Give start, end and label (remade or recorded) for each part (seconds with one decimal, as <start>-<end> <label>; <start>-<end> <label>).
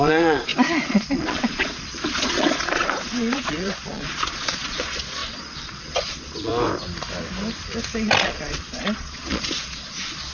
0.0-6.5 remade; 6.5-8.2 recorded; 8.2-10.3 remade